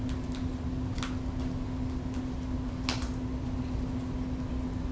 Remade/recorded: recorded